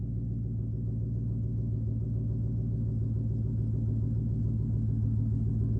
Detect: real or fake real